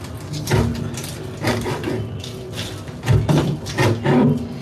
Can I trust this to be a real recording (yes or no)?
yes